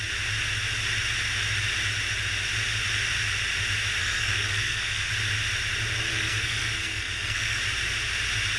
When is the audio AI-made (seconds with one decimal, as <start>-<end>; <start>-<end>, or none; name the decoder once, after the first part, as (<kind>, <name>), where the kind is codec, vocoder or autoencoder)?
4.0-5.1 (codec, SNAC); 6.1-7.6